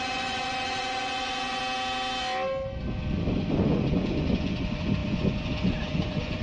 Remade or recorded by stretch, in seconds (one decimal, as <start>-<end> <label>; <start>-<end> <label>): 0.0-1.6 remade; 1.6-3.5 recorded; 3.5-6.4 remade

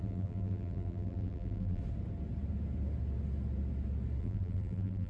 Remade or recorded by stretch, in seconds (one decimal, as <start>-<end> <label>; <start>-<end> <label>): 0.0-1.8 remade; 1.8-4.2 recorded; 4.2-5.1 remade

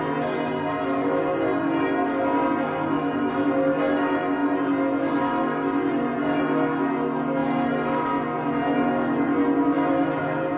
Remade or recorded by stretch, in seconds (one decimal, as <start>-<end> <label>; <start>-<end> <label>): 0.0-10.6 recorded

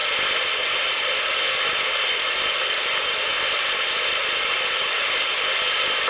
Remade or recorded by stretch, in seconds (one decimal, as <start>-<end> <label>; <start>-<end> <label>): 0.0-6.1 recorded